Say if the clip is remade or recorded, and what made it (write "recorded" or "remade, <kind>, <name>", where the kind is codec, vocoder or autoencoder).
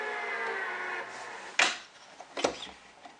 recorded